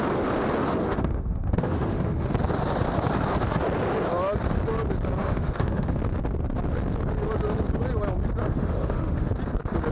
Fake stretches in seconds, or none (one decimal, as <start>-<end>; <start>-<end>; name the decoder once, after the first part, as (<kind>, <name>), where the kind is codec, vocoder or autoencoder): 0.8-2.3 (autoencoder, DAC-VAE); 5.2-6.0; 8.4-9.3